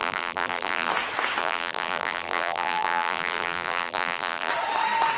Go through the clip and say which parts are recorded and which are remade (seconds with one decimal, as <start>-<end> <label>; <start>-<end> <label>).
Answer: 0.0-0.9 remade; 0.9-1.4 recorded; 1.4-4.5 remade; 4.5-5.2 recorded